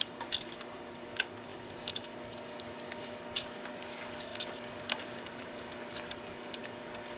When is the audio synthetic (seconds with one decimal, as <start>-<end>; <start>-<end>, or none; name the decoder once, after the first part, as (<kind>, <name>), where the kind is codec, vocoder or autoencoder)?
0.0-7.2 (codec, DAC)